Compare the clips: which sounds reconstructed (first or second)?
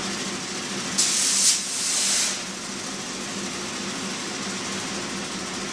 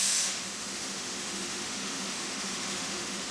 second